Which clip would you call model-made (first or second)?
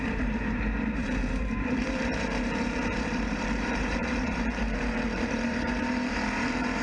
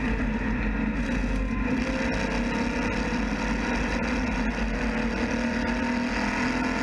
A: first